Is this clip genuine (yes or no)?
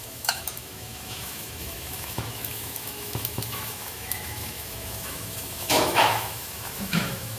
no